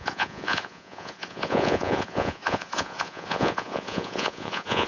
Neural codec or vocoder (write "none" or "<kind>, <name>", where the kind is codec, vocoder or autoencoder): vocoder, Vocos